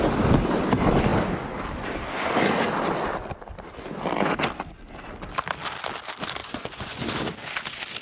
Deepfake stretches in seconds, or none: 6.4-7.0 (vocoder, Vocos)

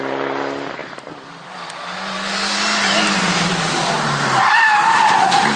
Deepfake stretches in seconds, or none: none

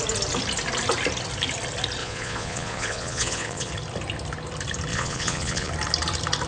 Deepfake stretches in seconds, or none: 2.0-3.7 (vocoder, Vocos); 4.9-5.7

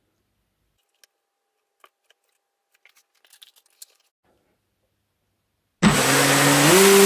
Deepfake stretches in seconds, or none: none

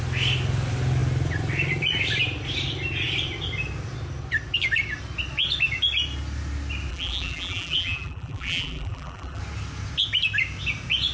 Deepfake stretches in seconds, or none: 6.9-9.4 (vocoder, BigVGAN v2)